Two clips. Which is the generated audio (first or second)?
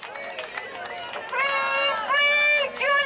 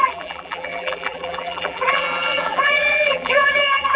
second